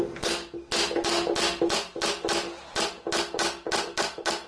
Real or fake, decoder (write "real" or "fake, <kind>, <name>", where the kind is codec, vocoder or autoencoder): real